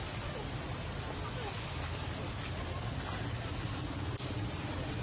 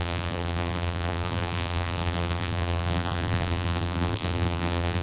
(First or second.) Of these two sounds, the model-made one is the second